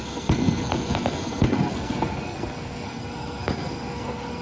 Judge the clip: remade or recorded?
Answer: remade